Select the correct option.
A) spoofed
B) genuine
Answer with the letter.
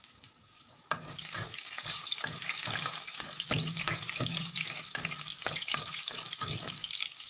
A